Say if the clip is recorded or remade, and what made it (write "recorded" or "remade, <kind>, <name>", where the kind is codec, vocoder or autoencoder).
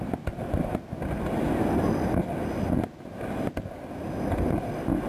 recorded